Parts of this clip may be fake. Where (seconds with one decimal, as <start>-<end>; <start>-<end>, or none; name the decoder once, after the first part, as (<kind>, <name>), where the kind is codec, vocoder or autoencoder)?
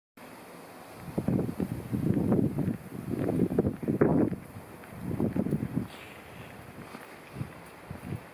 none